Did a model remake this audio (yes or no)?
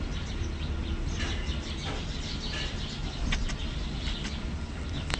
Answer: yes